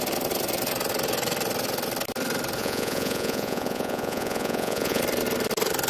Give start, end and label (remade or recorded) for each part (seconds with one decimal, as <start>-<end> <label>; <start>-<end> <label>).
0.0-2.6 recorded; 2.6-5.0 remade; 5.0-5.9 recorded